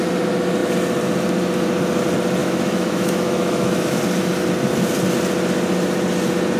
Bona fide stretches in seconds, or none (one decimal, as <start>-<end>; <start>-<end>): 0.0-2.4; 4.0-6.6